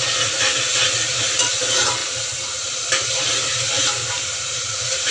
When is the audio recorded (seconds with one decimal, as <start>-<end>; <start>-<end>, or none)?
0.0-5.1